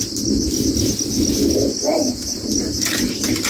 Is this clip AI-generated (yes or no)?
no